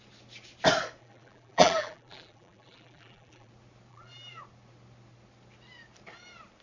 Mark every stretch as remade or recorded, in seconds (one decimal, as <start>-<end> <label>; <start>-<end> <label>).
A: 0.0-1.0 recorded; 1.0-3.5 remade; 3.5-3.9 recorded; 3.9-4.4 remade; 4.4-6.6 recorded